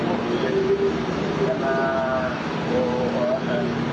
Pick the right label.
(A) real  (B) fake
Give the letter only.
A